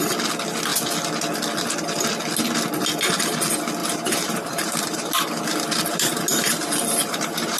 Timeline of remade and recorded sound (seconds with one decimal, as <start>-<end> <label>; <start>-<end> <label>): 0.0-3.8 recorded; 3.8-5.1 remade; 5.1-5.5 recorded; 5.5-7.6 remade

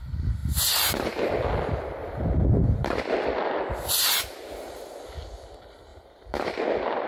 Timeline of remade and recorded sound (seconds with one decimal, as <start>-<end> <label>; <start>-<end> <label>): 0.0-0.4 recorded; 0.4-1.3 remade; 1.3-2.0 recorded; 2.0-3.0 remade; 3.0-5.9 recorded; 5.9-6.6 remade; 6.6-7.1 recorded